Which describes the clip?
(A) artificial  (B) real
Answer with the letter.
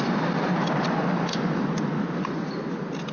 B